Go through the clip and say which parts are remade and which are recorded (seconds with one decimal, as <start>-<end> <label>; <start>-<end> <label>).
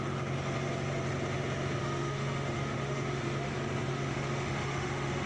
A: 0.0-1.8 recorded; 1.8-3.5 remade; 3.5-3.9 recorded; 3.9-5.3 remade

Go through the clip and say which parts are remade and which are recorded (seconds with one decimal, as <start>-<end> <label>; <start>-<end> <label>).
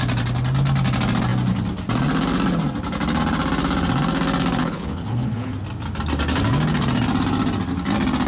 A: 0.0-4.6 recorded; 4.6-5.5 remade; 5.5-8.3 recorded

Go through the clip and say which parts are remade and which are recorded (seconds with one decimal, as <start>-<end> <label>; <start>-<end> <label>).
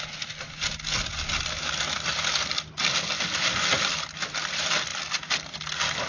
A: 0.0-6.1 recorded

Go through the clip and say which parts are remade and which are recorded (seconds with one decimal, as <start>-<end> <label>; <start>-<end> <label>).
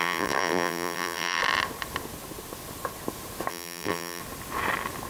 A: 0.0-1.4 remade; 1.4-3.5 recorded; 3.5-4.2 remade; 4.2-5.1 recorded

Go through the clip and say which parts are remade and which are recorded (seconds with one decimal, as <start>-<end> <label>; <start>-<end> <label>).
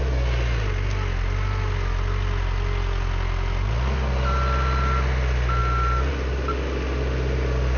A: 0.0-7.8 recorded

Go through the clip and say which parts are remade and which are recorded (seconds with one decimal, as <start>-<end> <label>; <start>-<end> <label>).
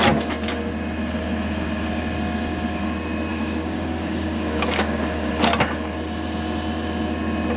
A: 0.0-3.3 recorded; 3.3-5.3 remade; 5.3-7.6 recorded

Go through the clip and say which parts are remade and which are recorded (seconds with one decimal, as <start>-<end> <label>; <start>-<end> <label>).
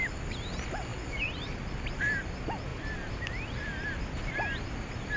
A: 0.0-0.9 recorded; 0.9-2.0 remade; 2.0-2.7 recorded; 2.7-4.3 remade; 4.3-5.2 recorded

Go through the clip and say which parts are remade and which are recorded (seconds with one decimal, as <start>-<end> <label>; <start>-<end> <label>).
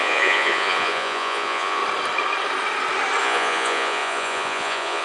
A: 0.0-1.8 remade; 1.8-3.2 recorded; 3.2-5.0 remade